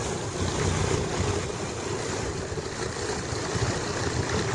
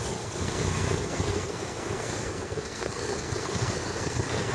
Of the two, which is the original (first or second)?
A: first